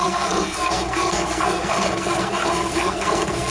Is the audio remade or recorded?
remade